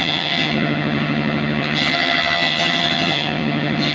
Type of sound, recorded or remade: remade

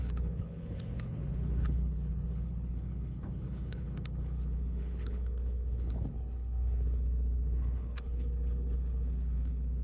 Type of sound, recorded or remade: remade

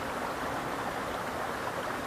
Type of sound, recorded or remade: recorded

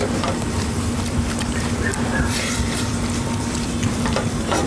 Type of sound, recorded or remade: remade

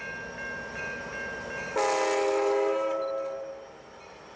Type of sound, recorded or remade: recorded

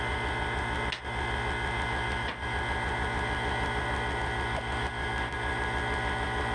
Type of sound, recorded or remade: recorded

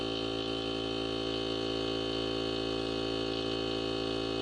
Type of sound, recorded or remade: recorded